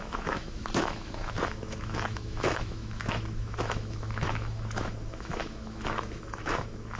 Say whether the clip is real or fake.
fake